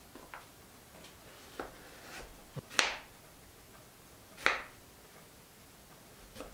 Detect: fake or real real